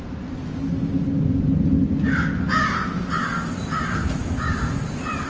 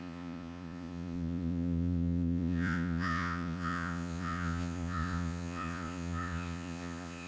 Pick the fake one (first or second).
second